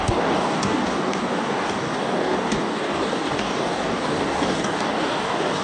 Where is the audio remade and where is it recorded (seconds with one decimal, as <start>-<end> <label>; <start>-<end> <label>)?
0.0-5.6 remade